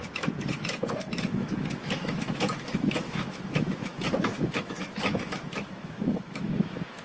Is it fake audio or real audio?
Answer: fake